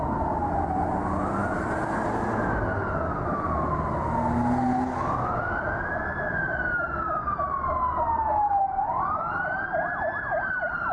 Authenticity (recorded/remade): recorded